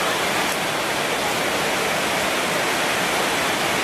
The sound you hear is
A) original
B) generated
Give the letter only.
A